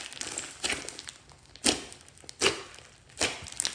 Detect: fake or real real